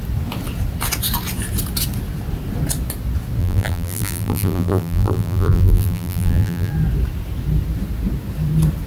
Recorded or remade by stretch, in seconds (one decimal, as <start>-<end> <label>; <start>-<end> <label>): 0.0-3.4 recorded; 3.4-6.7 remade; 6.7-8.9 recorded